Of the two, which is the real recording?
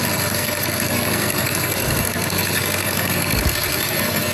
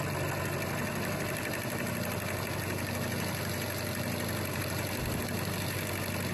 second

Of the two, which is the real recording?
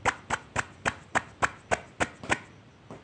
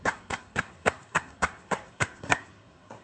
first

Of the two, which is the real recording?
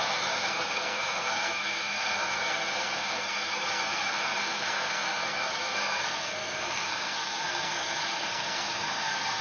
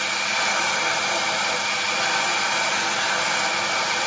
second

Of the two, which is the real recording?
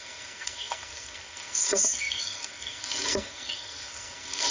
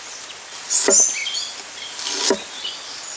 second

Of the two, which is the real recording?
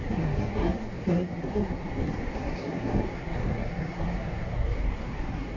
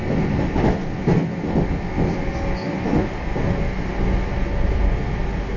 second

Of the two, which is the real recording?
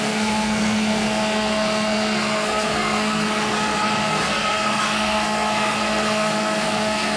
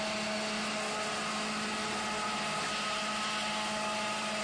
second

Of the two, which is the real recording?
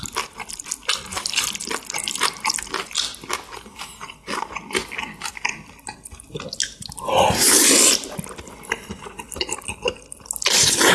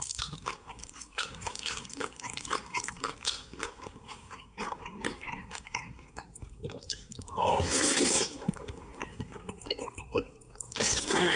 first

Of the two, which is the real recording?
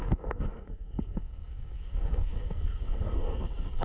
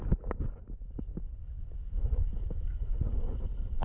second